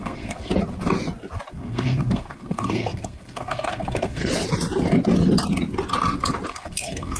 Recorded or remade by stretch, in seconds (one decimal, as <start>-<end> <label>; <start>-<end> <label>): 0.0-0.5 remade; 0.5-1.5 recorded; 1.5-4.3 remade; 4.3-6.5 recorded; 6.5-7.2 remade